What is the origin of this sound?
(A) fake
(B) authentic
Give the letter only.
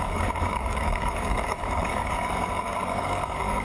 A